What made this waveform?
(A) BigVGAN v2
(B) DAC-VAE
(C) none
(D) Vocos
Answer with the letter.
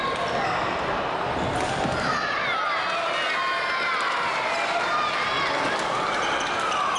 C